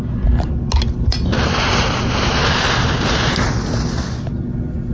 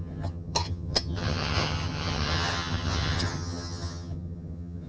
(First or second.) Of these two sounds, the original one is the first